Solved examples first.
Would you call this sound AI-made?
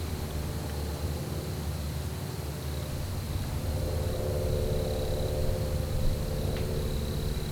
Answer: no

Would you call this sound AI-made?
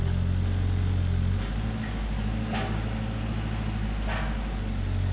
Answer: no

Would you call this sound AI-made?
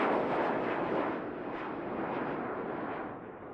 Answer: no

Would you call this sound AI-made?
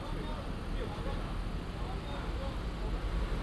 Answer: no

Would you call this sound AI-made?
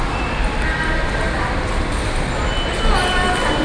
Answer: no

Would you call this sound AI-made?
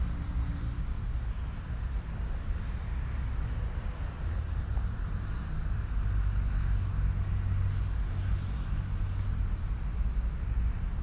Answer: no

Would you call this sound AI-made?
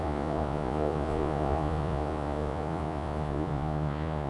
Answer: yes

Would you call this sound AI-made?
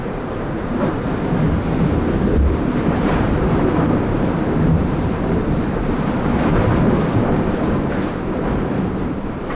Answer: yes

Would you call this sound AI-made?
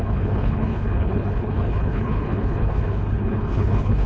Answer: yes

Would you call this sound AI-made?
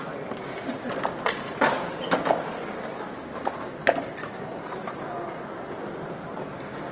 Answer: no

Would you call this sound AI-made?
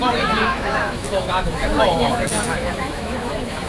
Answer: yes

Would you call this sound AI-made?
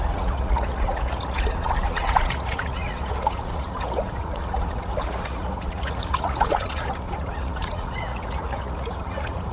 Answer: yes